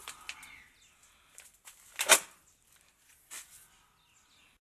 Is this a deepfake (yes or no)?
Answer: no